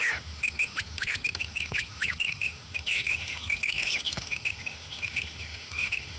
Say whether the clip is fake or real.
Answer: fake